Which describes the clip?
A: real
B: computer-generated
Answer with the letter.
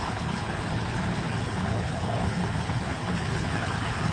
B